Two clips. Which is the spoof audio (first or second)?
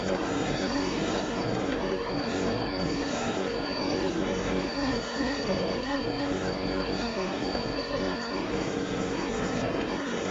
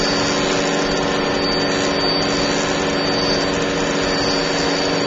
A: first